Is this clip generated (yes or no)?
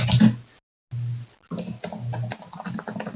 no